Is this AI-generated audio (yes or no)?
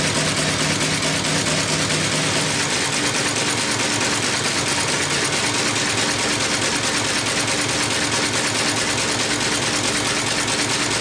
no